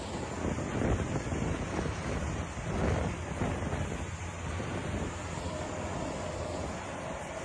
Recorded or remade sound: recorded